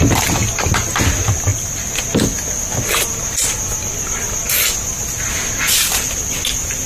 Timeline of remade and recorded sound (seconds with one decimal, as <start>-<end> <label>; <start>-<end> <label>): 0.0-1.5 recorded; 1.5-2.0 remade; 2.0-6.9 recorded